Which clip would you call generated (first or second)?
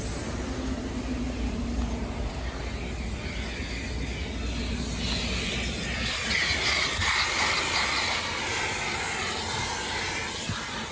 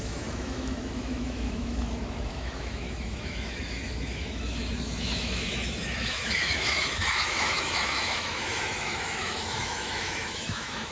second